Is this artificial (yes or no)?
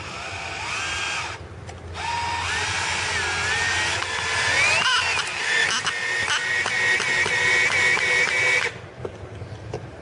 no